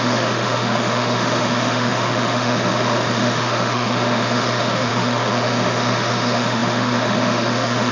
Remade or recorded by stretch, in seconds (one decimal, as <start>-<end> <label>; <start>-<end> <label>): 0.0-7.9 remade